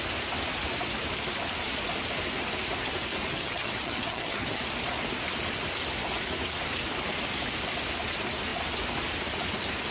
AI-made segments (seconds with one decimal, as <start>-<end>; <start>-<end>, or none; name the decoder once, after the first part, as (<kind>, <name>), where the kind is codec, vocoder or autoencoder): 3.3-4.6 (vocoder, HiFi-GAN)